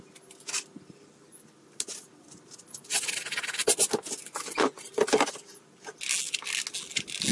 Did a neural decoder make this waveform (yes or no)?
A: no